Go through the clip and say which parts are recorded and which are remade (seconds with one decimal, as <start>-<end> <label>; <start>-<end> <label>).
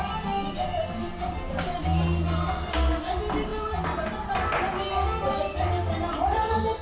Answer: 0.0-2.5 recorded; 2.5-3.0 remade; 3.0-6.8 recorded